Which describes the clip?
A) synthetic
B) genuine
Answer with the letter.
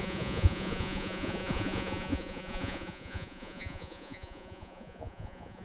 A